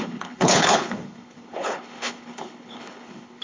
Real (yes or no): no